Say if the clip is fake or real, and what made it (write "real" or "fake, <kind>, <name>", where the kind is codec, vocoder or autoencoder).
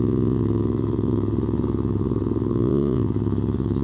fake, vocoder, WaveNeXt